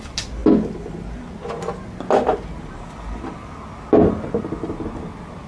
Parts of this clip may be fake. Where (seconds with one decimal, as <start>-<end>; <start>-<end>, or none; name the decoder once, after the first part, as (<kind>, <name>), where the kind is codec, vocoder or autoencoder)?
none